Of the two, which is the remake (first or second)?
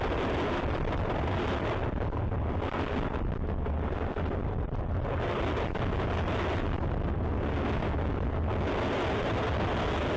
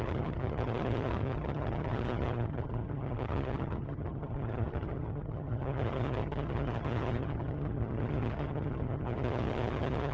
second